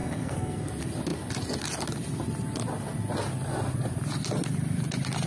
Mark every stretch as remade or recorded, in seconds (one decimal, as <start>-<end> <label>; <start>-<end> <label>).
0.0-0.7 remade; 0.7-5.3 recorded